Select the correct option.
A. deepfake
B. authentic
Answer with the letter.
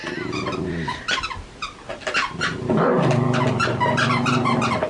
B